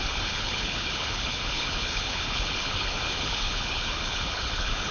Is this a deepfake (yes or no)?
yes